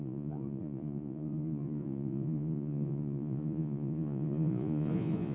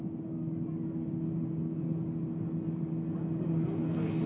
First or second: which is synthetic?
first